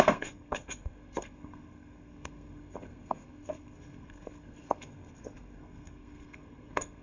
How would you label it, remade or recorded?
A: remade